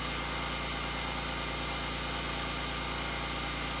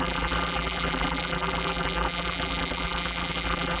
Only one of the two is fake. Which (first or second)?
second